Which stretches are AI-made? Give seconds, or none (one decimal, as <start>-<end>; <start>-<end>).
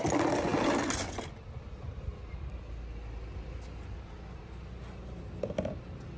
none